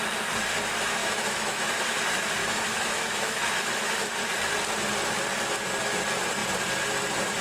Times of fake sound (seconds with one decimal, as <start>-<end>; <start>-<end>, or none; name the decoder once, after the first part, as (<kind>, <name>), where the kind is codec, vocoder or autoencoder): 1.0-1.7 (autoencoder, DAC-VAE); 2.4-4.0